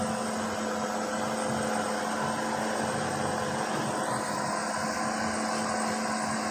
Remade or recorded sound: recorded